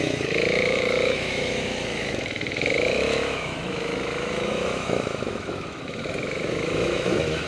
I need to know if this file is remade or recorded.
remade